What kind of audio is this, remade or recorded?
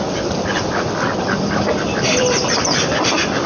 remade